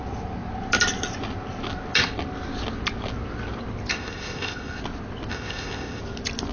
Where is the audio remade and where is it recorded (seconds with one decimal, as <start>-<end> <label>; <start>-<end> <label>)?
0.0-3.9 recorded; 3.9-4.8 remade; 4.8-5.3 recorded; 5.3-6.0 remade; 6.0-6.5 recorded